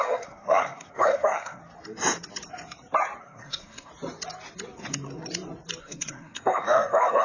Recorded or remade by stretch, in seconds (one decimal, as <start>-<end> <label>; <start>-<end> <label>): 0.0-1.6 remade; 1.6-3.2 recorded; 3.2-3.9 remade; 3.9-5.8 recorded; 5.8-7.2 remade